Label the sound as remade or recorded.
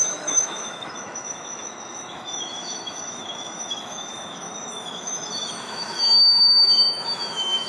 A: remade